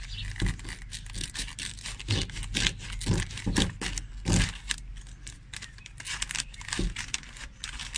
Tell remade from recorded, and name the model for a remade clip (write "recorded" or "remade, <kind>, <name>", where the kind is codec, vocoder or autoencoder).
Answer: recorded